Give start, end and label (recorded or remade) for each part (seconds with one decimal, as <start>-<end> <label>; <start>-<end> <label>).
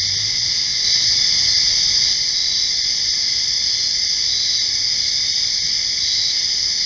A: 0.0-6.9 recorded